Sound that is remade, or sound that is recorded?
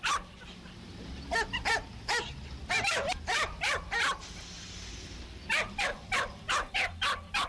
recorded